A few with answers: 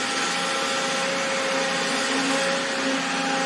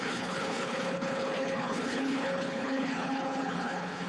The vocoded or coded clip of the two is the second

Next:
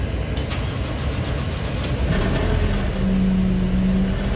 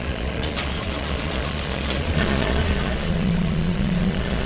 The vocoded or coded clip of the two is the second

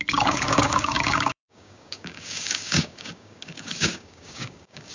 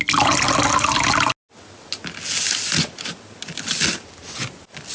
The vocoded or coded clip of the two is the first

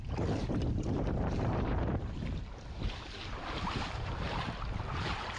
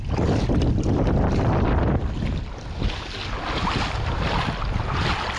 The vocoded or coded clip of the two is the first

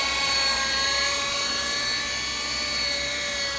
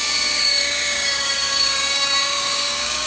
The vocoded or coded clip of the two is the second